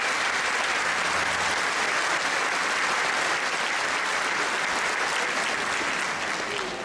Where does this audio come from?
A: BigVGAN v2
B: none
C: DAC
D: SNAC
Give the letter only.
B